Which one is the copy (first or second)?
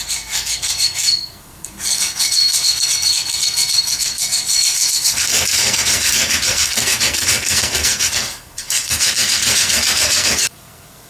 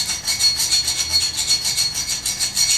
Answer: first